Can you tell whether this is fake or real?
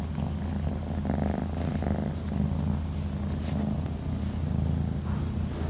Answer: real